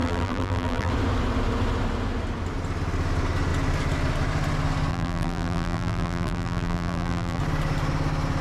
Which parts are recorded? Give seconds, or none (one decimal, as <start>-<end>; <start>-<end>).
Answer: 0.9-4.9; 7.4-8.4